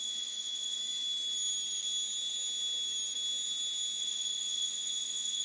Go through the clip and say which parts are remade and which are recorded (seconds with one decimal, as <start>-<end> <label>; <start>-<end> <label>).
0.0-0.8 remade; 0.8-4.0 recorded; 4.0-5.4 remade

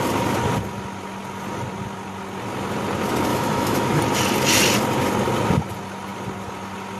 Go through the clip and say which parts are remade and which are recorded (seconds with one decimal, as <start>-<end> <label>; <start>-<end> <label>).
0.0-3.3 recorded; 3.3-4.0 remade; 4.0-7.0 recorded

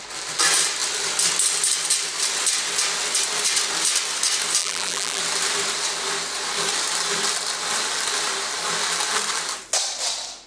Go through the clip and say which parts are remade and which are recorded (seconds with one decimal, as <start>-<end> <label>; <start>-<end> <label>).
0.0-4.6 recorded; 4.6-5.2 remade; 5.2-10.5 recorded

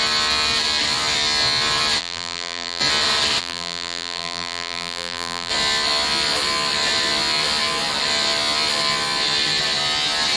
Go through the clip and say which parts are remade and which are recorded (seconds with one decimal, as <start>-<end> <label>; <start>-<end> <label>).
0.0-2.0 recorded; 2.0-2.8 remade; 2.8-3.4 recorded; 3.4-5.5 remade; 5.5-10.4 recorded

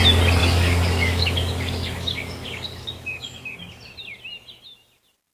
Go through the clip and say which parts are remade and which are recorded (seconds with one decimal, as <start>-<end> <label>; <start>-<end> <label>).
0.0-0.4 recorded; 0.4-3.6 remade; 3.6-5.3 recorded

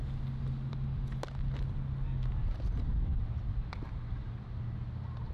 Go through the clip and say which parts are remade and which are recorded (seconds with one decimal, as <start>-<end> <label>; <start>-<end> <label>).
0.0-5.3 recorded

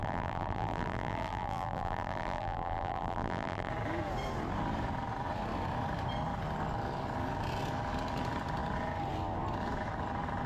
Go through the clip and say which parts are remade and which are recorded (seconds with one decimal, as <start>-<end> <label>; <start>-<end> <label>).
0.0-3.7 remade; 3.7-10.5 recorded